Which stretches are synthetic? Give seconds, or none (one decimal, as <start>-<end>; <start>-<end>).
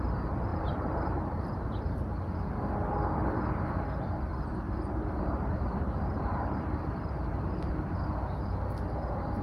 0.5-2.1; 4.3-7.7